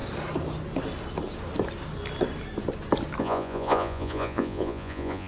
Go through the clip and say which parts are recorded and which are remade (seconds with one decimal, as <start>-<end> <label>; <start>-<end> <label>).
0.0-3.2 recorded; 3.2-5.3 remade